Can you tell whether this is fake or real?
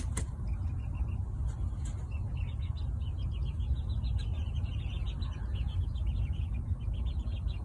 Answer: real